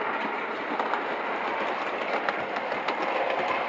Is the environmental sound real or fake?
real